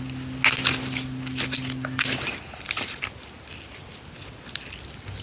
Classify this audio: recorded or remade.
recorded